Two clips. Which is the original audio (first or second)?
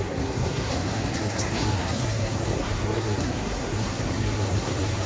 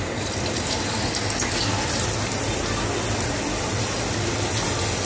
second